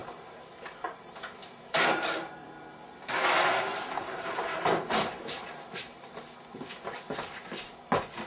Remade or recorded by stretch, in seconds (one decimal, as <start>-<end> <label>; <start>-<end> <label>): 0.0-2.3 remade; 2.3-3.7 recorded; 3.7-6.1 remade; 6.1-8.3 recorded